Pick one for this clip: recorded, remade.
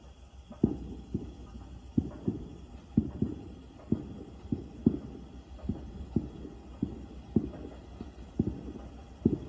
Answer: recorded